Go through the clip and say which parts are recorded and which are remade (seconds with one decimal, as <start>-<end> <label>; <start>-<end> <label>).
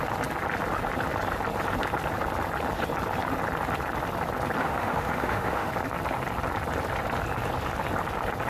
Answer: 0.0-4.6 recorded; 4.6-5.7 remade; 5.7-8.5 recorded